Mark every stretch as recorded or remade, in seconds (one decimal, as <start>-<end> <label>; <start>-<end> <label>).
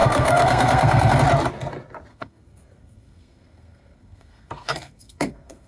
0.0-1.2 remade; 1.2-2.1 recorded; 2.1-5.7 remade